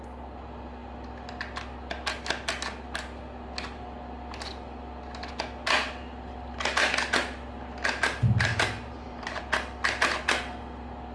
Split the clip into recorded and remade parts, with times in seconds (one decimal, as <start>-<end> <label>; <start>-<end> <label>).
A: 0.0-8.5 recorded; 8.5-9.4 remade; 9.4-11.1 recorded